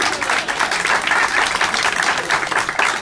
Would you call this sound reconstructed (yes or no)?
no